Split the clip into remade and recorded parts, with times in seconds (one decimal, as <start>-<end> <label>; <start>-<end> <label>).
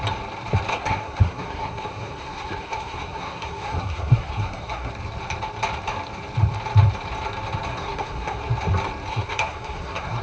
0.0-0.7 recorded; 0.7-4.9 remade; 4.9-7.7 recorded; 7.7-8.4 remade; 8.4-9.1 recorded; 9.1-10.2 remade